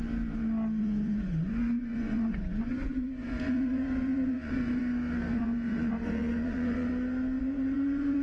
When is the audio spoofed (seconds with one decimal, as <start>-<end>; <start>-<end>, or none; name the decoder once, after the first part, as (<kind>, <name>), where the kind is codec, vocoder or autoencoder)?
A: 0.8-4.8 (vocoder, Vocos); 5.3-6.9; 7.4-8.2

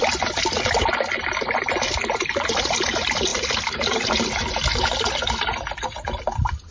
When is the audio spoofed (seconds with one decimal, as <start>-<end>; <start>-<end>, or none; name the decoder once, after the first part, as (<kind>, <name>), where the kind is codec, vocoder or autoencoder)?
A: none

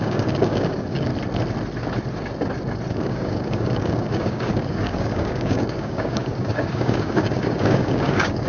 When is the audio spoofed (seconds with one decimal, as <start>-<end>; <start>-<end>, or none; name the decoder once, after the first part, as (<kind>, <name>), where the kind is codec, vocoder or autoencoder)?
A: 0.0-1.1 (codec, DAC); 2.9-8.5